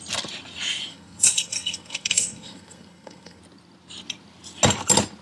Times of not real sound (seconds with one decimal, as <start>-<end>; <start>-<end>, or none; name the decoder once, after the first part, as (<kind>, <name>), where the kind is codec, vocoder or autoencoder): 0.9-3.4 (codec, SNAC)